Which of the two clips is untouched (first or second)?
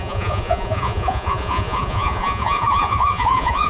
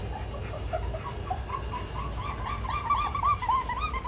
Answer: second